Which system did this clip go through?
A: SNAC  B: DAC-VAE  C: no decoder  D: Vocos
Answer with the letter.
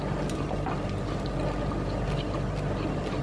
C